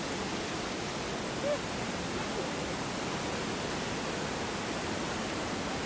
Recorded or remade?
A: recorded